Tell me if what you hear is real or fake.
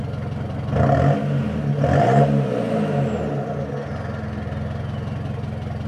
real